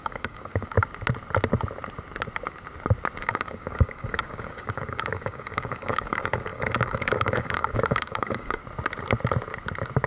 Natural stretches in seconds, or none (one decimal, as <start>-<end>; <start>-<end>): 0.7-3.2; 8.6-10.1